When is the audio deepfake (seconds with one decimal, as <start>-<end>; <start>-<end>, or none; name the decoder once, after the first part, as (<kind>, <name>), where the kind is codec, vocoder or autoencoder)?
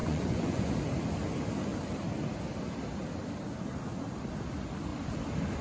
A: 0.0-0.7 (vocoder, Vocos)